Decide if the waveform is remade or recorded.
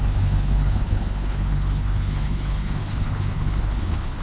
remade